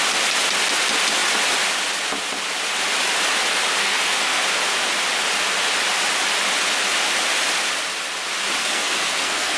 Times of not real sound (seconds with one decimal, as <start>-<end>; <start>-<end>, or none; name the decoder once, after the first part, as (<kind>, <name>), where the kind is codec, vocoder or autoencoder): 3.8-4.4 (codec, SNAC); 8.6-9.6